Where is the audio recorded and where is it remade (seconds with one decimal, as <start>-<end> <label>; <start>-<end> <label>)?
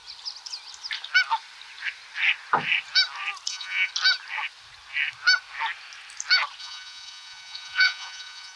0.0-3.5 recorded; 3.5-3.9 remade; 3.9-6.6 recorded; 6.6-8.6 remade